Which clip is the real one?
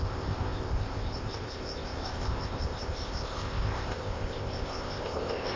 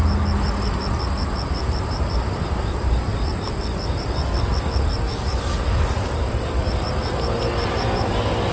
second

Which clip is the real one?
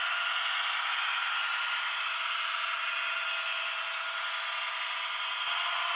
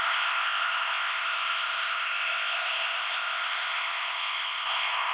first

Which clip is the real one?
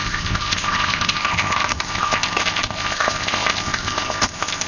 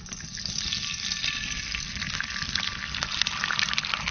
second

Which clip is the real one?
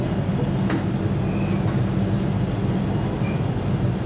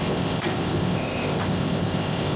first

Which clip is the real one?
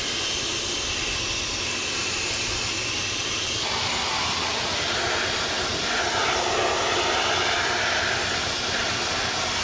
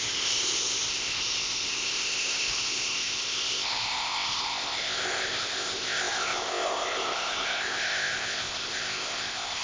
first